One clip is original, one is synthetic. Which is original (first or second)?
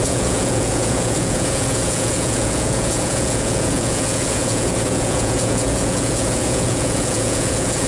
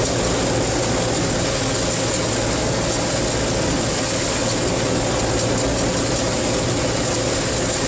second